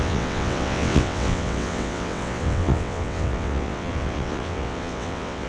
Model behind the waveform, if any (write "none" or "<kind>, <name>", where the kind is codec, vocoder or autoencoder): vocoder, WaveNeXt